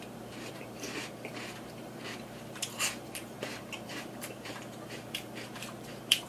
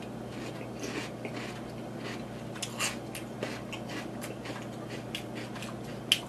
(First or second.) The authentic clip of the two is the second